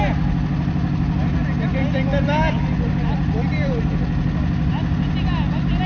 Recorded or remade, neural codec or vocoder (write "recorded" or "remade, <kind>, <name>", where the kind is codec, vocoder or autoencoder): recorded